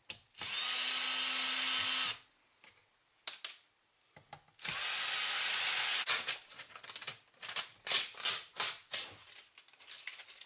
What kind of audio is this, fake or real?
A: real